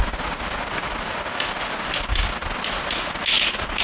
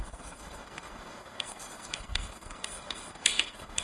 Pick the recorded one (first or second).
first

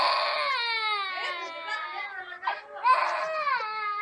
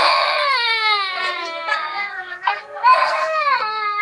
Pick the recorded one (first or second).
first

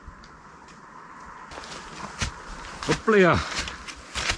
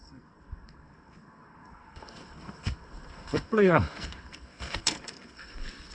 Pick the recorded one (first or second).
first